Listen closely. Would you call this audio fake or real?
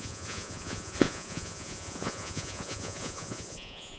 fake